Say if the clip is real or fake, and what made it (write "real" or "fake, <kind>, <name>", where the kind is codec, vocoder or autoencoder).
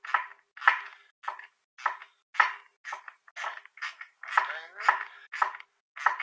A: real